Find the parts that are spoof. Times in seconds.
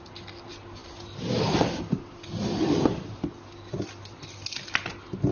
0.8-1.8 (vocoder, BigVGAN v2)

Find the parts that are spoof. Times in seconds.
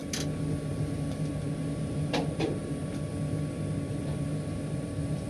0.7-2.8 (vocoder, BigVGAN v2); 4.0-5.3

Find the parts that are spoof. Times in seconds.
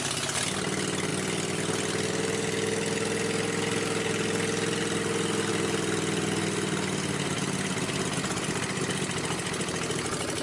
none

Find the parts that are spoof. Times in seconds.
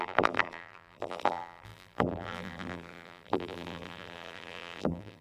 0.0-5.2 (vocoder, BigVGAN v2)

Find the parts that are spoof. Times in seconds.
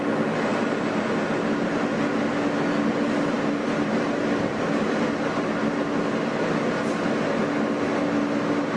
none